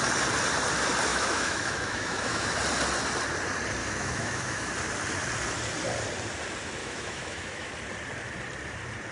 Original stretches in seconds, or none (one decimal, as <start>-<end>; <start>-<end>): 0.0-1.1; 2.5-3.8; 4.7-6.8; 7.7-9.1